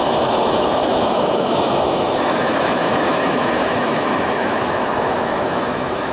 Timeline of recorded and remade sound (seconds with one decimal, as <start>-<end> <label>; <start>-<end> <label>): 0.0-6.1 remade